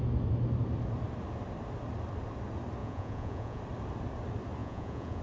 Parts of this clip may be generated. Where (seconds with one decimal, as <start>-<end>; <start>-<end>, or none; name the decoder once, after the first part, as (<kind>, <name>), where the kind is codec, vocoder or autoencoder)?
2.8-3.6 (vocoder, Vocos); 4.6-5.2

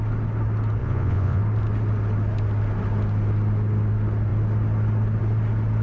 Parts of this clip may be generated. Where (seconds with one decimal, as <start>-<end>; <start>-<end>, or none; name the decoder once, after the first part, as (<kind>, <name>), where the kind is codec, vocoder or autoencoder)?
0.8-1.4 (vocoder, Vocos)